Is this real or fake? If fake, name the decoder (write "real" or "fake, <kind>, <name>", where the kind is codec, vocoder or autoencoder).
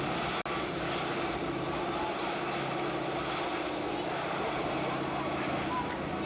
real